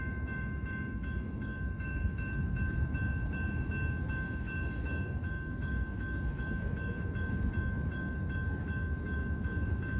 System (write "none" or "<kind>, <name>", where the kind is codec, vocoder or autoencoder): autoencoder, DAC-VAE